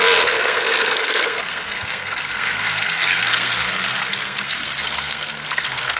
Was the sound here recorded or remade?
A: remade